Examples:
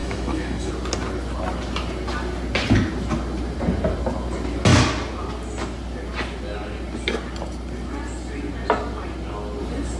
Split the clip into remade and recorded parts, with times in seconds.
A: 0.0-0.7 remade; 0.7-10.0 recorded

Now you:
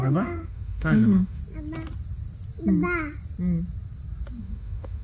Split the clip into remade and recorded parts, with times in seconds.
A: 0.0-1.4 remade; 1.4-4.4 recorded; 4.4-5.0 remade

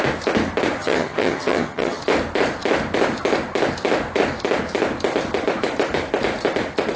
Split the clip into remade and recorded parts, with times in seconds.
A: 0.0-0.8 recorded; 0.8-2.0 remade; 2.0-7.0 recorded

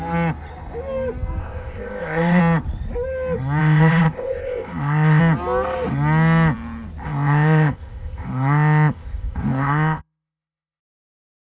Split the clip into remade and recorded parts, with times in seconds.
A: 0.0-1.4 recorded; 1.4-2.4 remade; 2.4-3.6 recorded; 3.6-5.2 remade; 5.2-7.0 recorded; 7.0-10.8 remade; 10.8-11.5 recorded

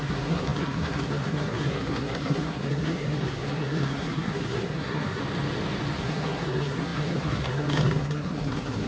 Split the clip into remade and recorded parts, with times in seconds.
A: 0.0-5.2 remade; 5.2-6.0 recorded; 6.0-8.9 remade

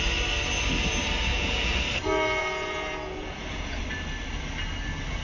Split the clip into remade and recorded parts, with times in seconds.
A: 0.0-1.3 recorded; 1.3-1.8 remade; 1.8-2.4 recorded; 2.4-3.8 remade; 3.8-5.2 recorded

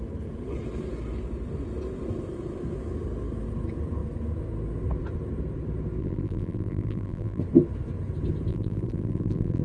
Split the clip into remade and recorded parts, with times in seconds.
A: 0.0-6.0 recorded; 6.0-7.4 remade; 7.4-8.5 recorded; 8.5-9.6 remade

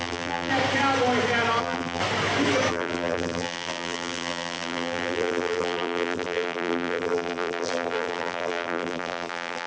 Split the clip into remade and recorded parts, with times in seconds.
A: 0.0-0.5 remade; 0.5-1.6 recorded; 1.6-2.0 remade; 2.0-2.7 recorded; 2.7-9.7 remade